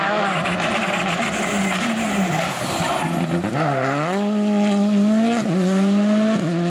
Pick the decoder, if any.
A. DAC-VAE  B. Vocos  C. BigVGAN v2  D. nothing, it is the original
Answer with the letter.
D